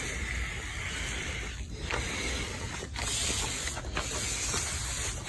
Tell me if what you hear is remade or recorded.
recorded